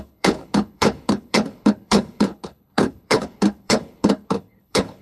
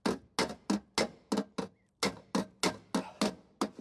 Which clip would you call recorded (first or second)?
second